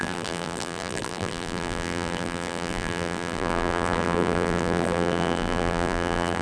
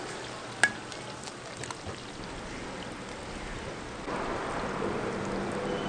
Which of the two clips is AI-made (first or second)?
first